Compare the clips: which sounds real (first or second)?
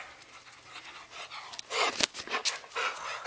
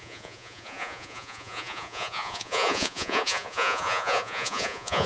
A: first